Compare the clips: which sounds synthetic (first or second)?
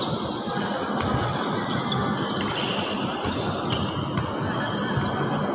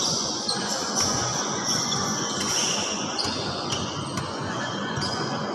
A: second